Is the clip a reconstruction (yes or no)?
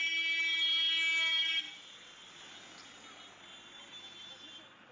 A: no